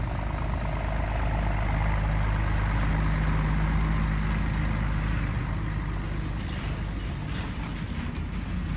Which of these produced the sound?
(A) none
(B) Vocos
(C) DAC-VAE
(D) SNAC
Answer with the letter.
A